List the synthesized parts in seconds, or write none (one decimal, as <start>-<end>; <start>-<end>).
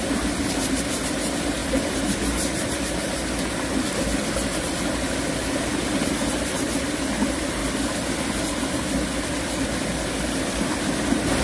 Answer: none